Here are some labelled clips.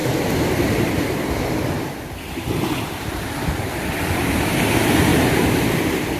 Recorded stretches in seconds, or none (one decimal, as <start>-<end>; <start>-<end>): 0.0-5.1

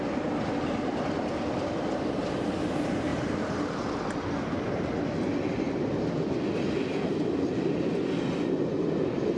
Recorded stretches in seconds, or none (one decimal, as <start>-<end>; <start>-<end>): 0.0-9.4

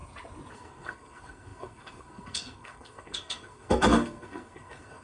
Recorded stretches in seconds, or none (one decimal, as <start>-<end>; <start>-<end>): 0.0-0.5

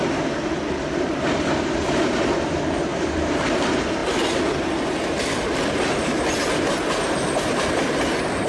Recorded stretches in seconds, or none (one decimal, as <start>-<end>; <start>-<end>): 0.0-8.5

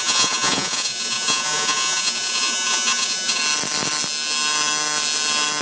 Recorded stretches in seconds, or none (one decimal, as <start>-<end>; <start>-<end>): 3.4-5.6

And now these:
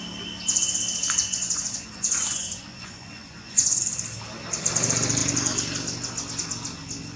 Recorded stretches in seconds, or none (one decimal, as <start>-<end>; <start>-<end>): 0.0-1.2; 3.8-7.2